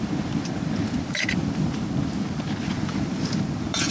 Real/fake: fake